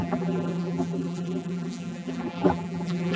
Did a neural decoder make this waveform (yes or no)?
yes